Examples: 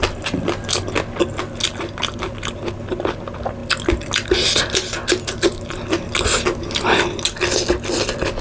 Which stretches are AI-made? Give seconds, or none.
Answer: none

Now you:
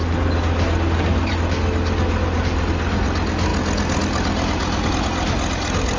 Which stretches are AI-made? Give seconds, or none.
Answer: none

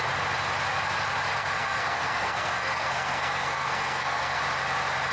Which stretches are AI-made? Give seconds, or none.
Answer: 1.3-4.4 (codec, SNAC)